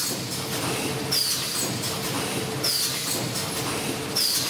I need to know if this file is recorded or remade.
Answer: recorded